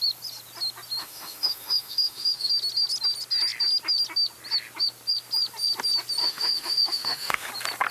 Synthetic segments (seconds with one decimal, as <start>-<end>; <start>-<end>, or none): 1.0-2.5; 6.2-7.5